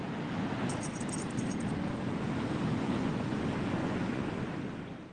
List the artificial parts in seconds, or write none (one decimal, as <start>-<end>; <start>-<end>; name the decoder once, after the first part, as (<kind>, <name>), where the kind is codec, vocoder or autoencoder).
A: 2.7-3.4 (vocoder, Vocos); 3.8-4.3